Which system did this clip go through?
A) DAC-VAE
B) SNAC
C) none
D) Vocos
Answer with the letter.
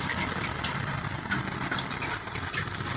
C